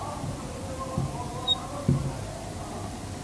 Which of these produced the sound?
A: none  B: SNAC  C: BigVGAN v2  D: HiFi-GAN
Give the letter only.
A